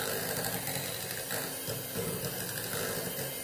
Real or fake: real